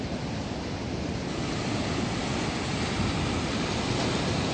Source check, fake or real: real